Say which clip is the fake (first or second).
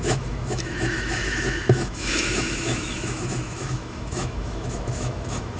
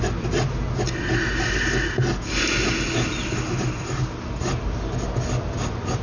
first